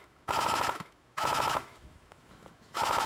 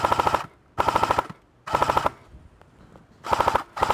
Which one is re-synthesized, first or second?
first